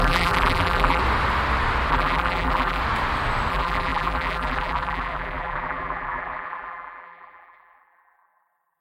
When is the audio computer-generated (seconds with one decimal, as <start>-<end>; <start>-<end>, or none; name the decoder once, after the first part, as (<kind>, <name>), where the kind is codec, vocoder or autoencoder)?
0.0-1.0 (vocoder, BigVGAN v2); 1.9-2.8; 3.5-8.8